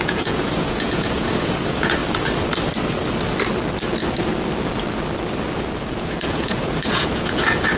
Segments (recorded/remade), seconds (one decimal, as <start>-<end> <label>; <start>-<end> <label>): 0.0-2.0 remade; 2.0-6.0 recorded; 6.0-7.8 remade